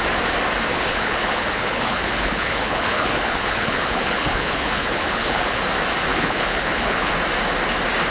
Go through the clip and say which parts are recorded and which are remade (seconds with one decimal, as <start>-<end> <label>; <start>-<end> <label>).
0.0-0.7 recorded; 0.7-5.6 remade; 5.6-6.1 recorded; 6.1-7.1 remade; 7.1-8.1 recorded